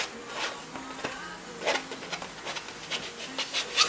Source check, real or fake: real